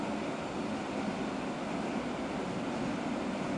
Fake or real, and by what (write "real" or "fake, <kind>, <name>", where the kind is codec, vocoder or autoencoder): real